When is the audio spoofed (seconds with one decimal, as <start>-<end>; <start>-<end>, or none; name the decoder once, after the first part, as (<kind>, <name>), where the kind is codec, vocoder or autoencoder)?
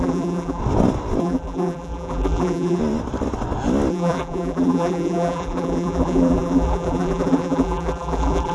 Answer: 0.0-0.6 (vocoder, BigVGAN v2); 1.2-2.8; 3.9-8.5